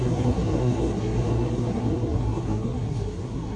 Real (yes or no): no